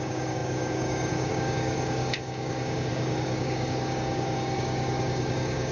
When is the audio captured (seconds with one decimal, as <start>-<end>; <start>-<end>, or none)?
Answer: none